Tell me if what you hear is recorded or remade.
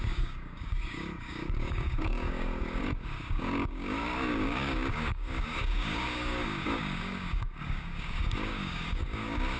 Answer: remade